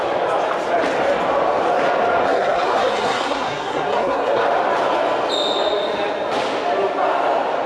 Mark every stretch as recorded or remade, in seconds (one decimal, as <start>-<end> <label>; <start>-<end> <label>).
0.0-2.2 recorded; 2.2-4.4 remade; 4.4-7.7 recorded